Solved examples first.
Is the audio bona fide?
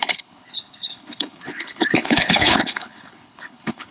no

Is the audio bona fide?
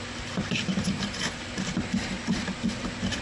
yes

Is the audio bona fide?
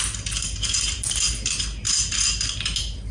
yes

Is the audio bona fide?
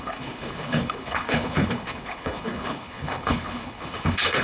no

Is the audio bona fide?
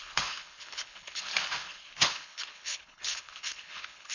no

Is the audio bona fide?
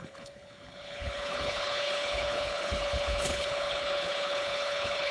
no